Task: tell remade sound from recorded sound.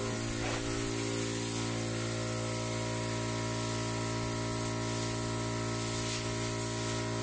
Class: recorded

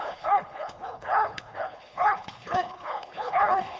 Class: remade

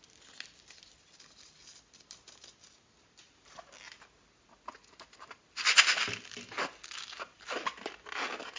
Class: recorded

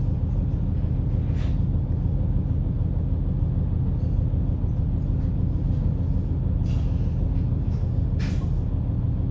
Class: recorded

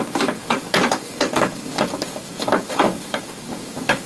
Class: remade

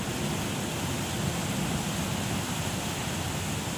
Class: recorded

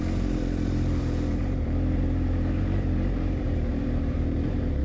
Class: remade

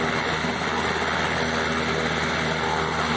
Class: recorded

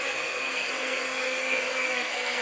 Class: remade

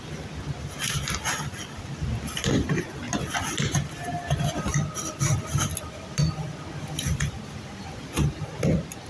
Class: recorded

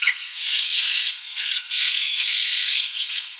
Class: remade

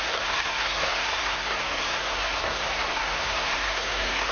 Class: remade